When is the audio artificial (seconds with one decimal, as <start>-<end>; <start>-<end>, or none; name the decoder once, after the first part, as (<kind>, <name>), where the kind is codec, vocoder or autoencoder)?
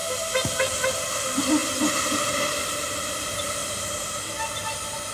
none